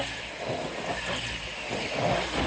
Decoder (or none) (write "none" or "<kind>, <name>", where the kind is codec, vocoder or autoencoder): none